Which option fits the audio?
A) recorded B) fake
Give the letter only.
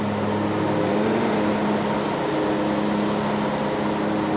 A